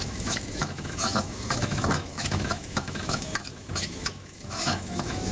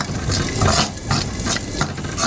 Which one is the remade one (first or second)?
first